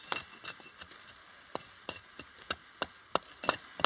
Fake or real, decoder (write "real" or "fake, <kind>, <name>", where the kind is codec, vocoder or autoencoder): real